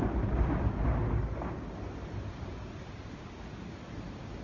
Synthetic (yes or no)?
no